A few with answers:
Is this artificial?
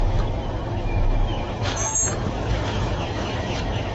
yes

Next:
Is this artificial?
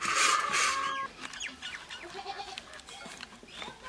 no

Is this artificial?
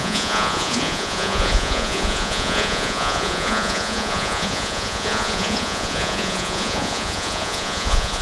yes